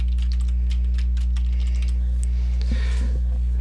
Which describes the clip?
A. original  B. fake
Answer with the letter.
A